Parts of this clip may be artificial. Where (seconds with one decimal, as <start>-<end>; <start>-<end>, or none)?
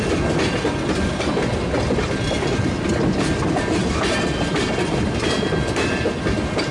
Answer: none